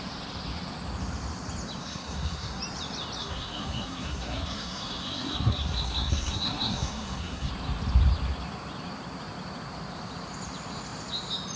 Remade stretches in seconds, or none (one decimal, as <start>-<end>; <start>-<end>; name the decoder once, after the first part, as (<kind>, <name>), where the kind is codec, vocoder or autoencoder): 1.8-2.6 (codec, SNAC); 3.2-7.5